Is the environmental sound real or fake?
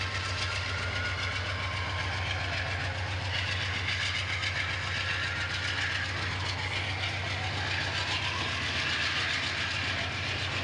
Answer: real